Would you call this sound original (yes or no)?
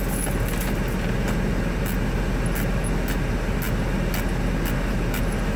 yes